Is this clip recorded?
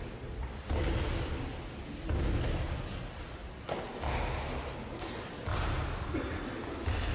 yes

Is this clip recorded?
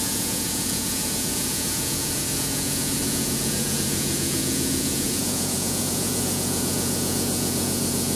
no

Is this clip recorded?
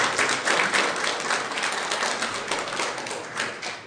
yes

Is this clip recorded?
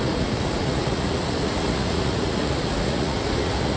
no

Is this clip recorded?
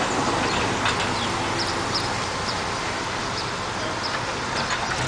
yes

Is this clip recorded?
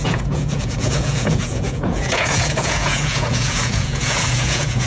no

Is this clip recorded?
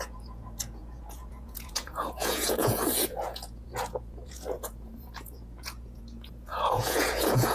no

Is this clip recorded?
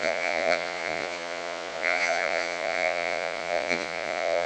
no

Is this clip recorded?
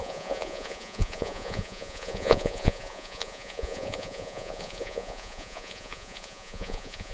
no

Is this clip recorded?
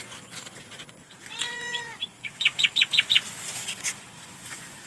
no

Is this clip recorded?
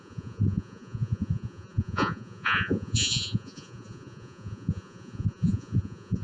no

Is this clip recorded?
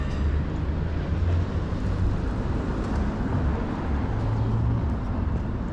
yes